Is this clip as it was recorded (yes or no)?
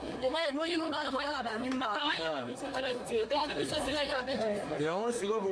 no